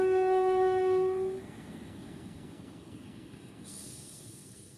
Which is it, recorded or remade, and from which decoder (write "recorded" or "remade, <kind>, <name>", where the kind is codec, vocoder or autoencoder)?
remade, codec, SNAC